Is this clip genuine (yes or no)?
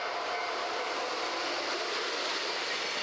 no